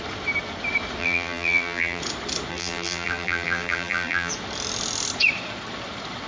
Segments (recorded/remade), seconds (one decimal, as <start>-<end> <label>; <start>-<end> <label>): 0.0-1.0 recorded; 1.0-2.0 remade; 2.0-2.5 recorded; 2.5-4.3 remade; 4.3-6.3 recorded